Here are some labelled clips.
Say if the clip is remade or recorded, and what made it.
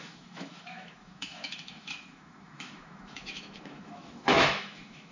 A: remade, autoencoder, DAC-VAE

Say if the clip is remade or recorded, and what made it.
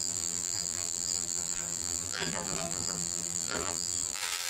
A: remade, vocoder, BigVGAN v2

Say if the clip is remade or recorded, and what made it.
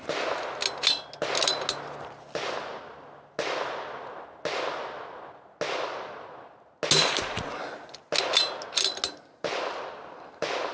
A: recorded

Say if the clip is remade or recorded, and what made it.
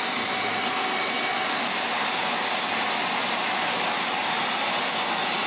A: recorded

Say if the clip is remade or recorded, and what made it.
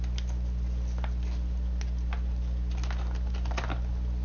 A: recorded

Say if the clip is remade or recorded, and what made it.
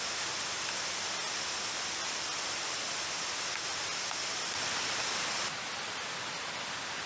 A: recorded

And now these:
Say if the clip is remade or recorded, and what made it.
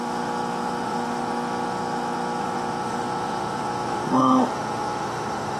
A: remade, autoencoder, DAC-VAE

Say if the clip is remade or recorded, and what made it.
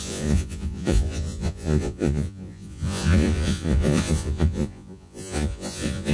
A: remade, vocoder, Vocos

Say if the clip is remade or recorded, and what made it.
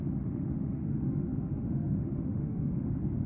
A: remade, autoencoder, DAC-VAE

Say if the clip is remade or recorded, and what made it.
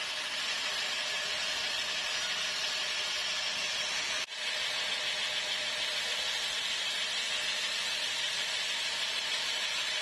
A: recorded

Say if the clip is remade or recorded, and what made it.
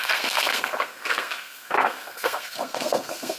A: remade, codec, SNAC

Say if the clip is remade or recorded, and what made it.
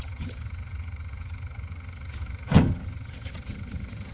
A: remade, vocoder, HiFi-GAN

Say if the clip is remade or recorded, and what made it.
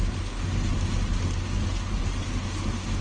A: recorded